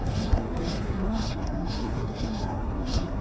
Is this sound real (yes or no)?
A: no